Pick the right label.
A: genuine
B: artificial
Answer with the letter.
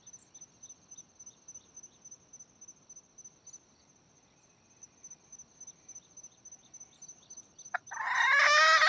A